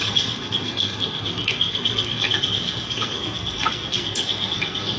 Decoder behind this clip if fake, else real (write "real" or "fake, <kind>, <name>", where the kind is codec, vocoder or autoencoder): fake, codec, SNAC